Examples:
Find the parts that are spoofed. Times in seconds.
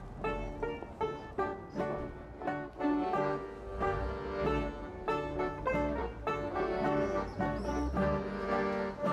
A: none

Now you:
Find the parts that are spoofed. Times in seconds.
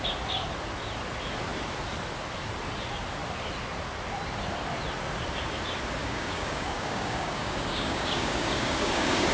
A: 6.0-9.3 (codec, DAC)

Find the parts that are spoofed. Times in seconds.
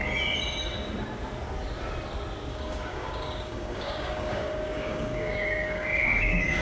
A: 2.5-6.6 (codec, DAC)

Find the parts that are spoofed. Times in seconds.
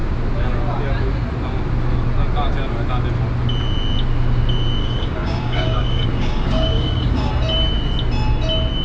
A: 4.8-7.3 (codec, DAC)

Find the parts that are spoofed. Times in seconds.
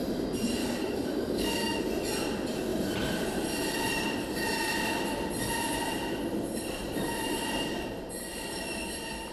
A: 0.6-1.8 (codec, DAC)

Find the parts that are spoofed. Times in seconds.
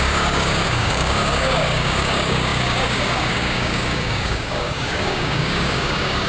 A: 0.0-6.3 (codec, DAC)